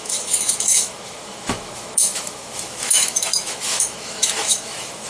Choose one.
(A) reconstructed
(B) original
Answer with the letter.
A